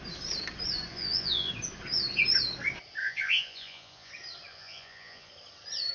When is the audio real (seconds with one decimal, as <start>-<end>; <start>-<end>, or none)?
0.0-0.9; 1.5-3.0; 4.1-4.5; 5.3-5.9

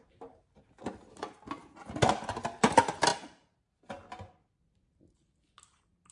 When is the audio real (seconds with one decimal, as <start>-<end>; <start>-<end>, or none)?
0.0-6.1

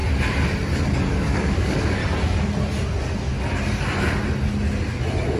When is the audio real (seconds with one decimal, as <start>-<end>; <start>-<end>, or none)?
0.0-1.1; 2.0-5.4

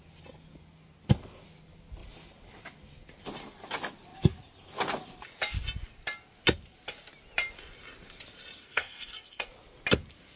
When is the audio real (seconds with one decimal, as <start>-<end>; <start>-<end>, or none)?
0.0-8.6; 9.5-10.4

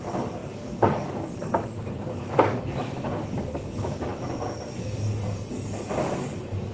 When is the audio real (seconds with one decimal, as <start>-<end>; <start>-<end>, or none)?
4.1-4.8

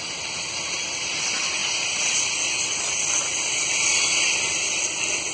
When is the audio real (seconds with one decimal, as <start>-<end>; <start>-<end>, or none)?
0.0-5.3

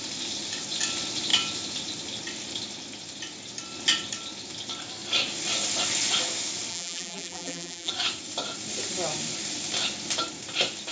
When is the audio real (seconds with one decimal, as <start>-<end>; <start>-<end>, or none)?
0.0-6.7; 7.9-10.9